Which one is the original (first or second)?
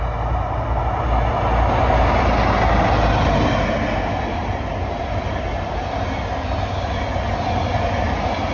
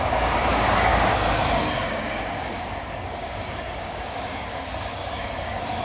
first